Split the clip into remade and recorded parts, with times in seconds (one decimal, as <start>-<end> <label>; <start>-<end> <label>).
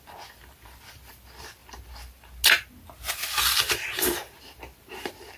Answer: 0.0-5.4 recorded